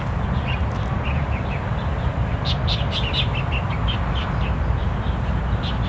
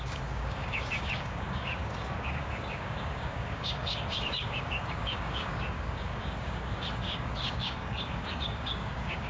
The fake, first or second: second